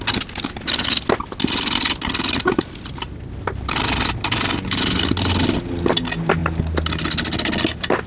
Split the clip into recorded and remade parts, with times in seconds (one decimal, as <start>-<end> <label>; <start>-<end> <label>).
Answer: 0.0-8.1 recorded